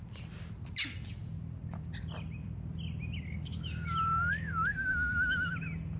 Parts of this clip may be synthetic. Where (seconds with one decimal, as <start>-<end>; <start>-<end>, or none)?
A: 4.7-5.5